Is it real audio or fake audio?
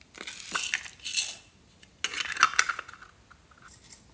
real